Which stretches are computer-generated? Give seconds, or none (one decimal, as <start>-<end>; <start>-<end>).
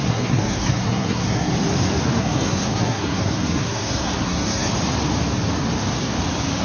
0.0-1.5; 2.2-4.7